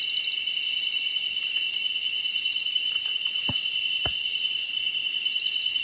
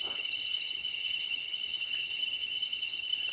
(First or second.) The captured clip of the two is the first